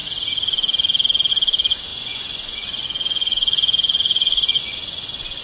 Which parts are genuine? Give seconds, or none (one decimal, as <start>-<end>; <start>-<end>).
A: 0.0-1.9